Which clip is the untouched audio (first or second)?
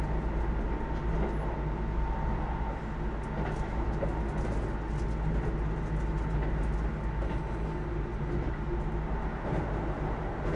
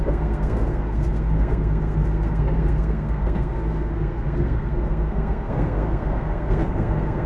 first